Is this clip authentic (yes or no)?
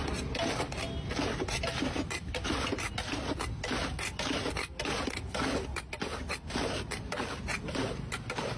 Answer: yes